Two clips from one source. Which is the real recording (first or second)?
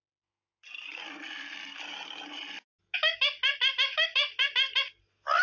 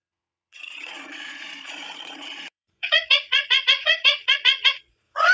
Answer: first